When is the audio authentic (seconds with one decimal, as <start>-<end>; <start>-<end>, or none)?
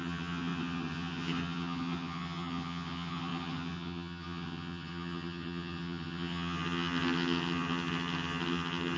none